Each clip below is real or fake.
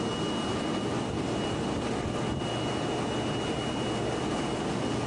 real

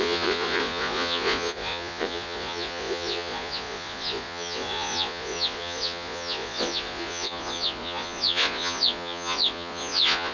fake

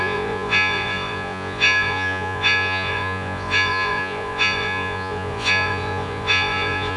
fake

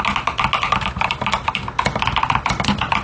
real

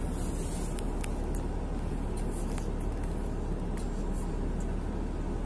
real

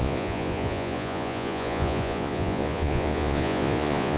fake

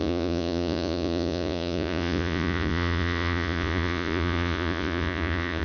fake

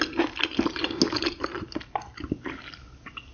real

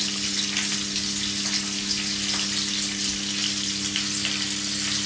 real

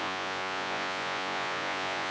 fake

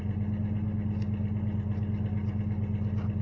real